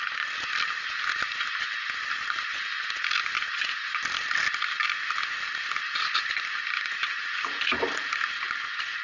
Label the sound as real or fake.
real